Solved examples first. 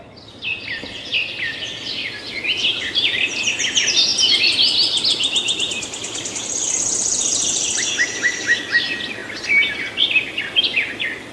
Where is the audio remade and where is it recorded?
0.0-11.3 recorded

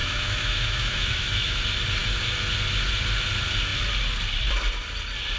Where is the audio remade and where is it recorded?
0.0-1.6 remade; 1.6-5.4 recorded